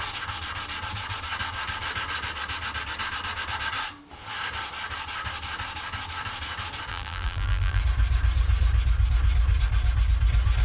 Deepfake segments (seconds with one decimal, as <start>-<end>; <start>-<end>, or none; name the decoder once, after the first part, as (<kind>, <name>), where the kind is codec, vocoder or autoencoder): 6.9-7.8 (vocoder, BigVGAN v2)